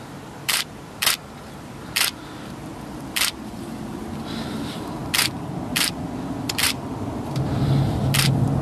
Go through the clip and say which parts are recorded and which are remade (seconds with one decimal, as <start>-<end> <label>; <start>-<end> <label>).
0.0-5.0 remade; 5.0-5.7 recorded; 5.7-8.6 remade